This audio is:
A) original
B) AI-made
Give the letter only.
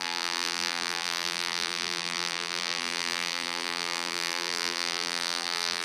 B